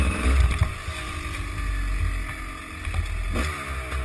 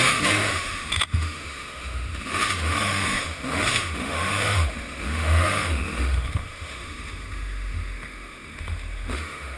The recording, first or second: first